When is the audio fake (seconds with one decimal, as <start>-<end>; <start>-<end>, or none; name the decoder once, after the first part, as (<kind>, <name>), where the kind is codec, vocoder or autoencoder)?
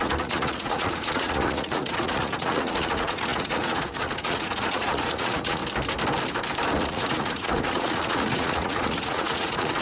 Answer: 0.0-5.6 (vocoder, Vocos); 6.7-9.8